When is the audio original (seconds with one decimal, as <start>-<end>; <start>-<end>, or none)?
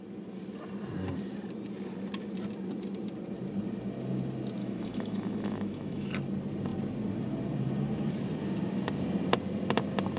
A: 0.0-4.6; 6.1-10.2